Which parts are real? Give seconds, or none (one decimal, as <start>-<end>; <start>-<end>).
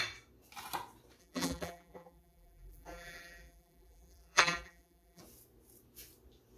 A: 0.0-1.2; 5.2-6.6